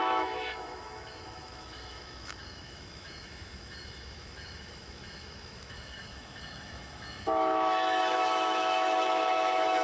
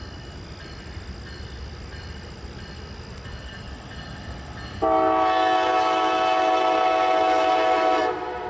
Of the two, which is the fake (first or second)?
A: first